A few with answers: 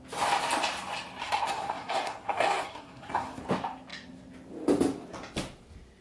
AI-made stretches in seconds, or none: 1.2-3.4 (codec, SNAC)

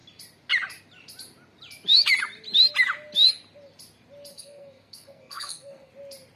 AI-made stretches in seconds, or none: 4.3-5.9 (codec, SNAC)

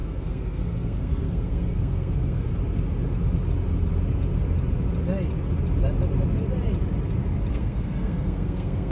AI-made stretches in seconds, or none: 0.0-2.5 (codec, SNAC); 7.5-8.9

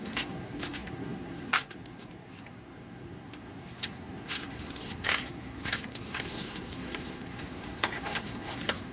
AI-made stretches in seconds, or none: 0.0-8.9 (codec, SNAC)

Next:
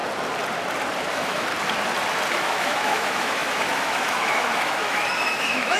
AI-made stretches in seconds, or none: 1.1-1.5 (autoencoder, DAC-VAE); 2.3-5.8

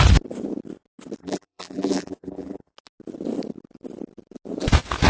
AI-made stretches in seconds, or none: 1.2-2.7 (vocoder, BigVGAN v2)